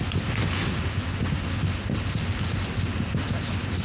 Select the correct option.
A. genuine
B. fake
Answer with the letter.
A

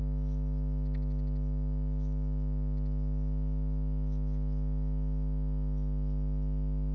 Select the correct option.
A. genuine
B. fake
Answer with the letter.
A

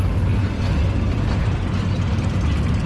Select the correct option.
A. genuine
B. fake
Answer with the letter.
A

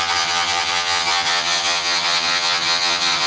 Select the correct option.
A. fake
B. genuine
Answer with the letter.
A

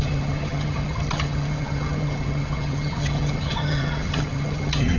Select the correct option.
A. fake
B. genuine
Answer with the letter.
A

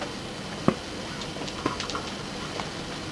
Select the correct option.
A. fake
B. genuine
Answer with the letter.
B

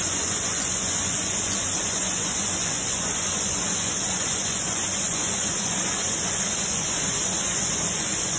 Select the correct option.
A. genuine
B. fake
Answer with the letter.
B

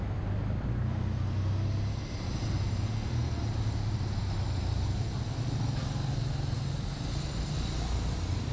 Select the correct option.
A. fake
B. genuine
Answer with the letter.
B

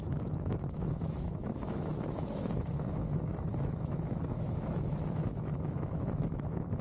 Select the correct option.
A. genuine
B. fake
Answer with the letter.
B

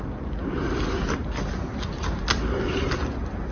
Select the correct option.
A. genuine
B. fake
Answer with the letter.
A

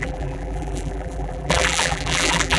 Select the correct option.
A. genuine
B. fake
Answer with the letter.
B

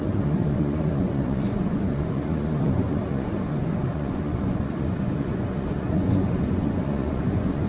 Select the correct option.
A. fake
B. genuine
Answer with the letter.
A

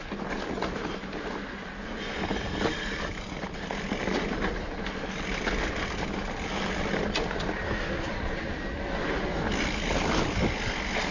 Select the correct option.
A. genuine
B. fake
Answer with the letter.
A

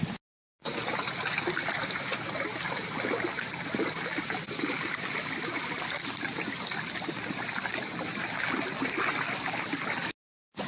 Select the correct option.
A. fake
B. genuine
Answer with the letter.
B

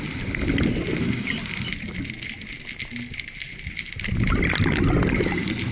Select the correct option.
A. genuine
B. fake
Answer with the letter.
A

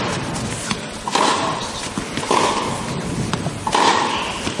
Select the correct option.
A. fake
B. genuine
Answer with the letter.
B